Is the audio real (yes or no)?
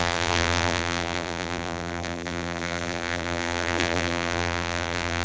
no